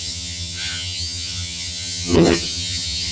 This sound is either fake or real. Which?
fake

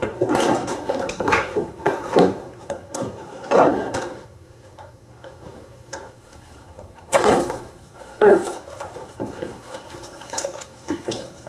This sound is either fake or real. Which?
fake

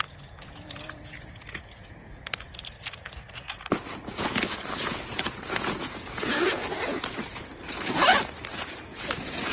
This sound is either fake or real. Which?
fake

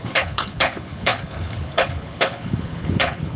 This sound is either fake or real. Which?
fake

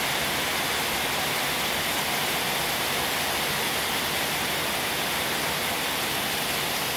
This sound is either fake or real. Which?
real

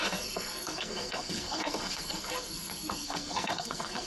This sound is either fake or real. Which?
fake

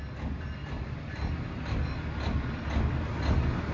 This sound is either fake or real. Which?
real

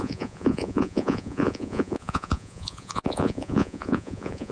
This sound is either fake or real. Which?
fake